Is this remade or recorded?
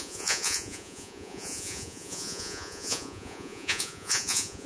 remade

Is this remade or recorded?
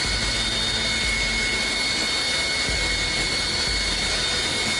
recorded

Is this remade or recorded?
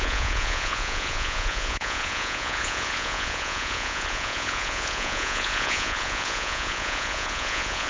remade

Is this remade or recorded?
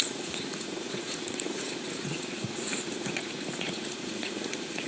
remade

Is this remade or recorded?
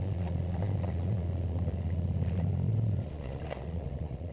remade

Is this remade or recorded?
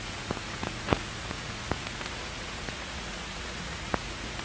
remade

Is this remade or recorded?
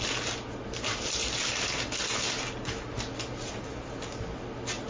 recorded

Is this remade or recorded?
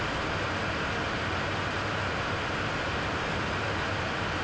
recorded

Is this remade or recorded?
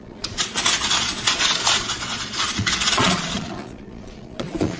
remade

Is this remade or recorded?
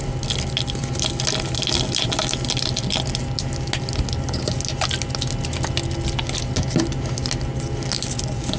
recorded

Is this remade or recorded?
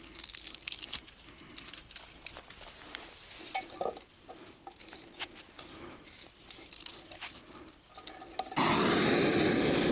recorded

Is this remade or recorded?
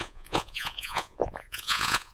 remade